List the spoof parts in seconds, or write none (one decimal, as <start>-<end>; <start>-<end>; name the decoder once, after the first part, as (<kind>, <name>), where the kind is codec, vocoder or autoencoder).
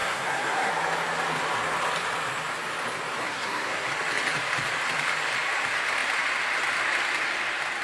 0.0-0.7 (codec, SNAC); 3.2-3.9